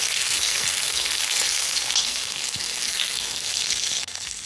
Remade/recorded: remade